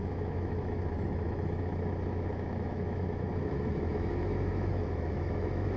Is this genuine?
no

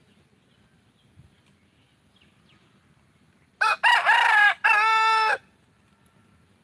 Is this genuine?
yes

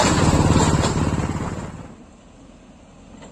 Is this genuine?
yes